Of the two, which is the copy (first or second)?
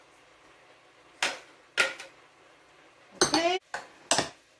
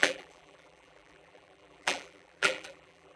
second